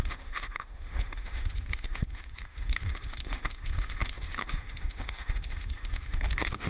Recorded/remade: remade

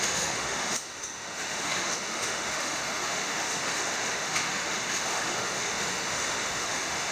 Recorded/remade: remade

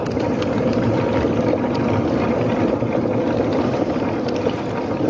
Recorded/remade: recorded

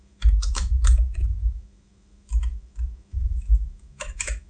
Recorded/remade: remade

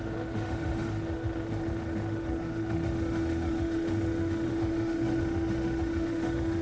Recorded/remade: remade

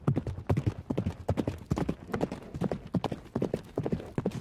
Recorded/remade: recorded